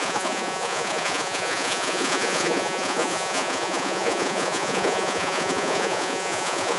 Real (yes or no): no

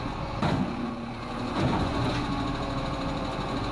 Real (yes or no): no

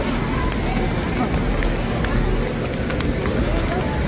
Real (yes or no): yes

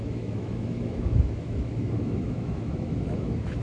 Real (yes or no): no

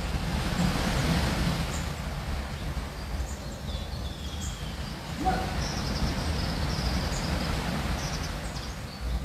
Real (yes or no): yes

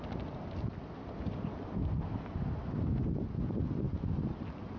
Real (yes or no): yes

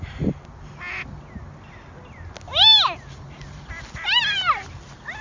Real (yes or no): yes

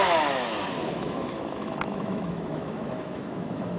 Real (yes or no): no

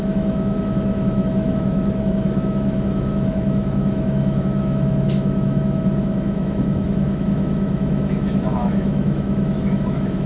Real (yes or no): no